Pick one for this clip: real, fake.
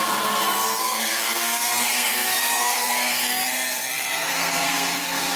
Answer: fake